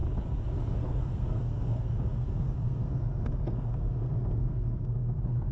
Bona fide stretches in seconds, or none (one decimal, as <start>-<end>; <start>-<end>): 0.0-0.7